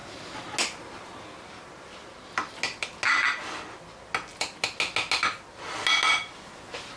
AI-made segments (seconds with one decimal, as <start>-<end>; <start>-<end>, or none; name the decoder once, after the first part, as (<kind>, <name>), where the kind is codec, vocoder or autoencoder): none